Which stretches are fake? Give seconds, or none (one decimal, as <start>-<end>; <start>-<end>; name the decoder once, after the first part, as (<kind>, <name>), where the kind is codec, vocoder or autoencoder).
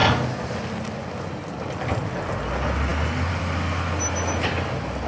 none